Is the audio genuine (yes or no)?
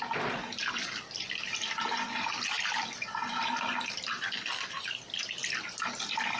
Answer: yes